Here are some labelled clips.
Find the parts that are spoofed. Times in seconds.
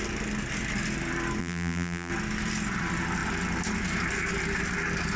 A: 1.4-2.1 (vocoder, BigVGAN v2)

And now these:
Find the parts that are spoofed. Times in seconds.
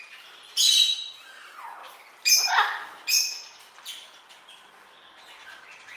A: 1.8-2.5 (vocoder, BigVGAN v2); 3.2-4.3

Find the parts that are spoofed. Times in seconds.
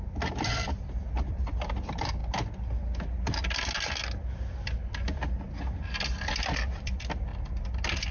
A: 0.0-2.2 (vocoder, BigVGAN v2); 6.4-7.3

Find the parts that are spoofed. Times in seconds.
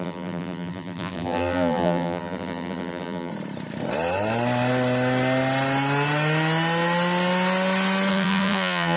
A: 0.0-3.3 (vocoder, BigVGAN v2); 8.1-9.0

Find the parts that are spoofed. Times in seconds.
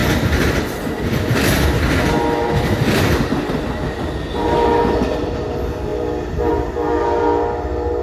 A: none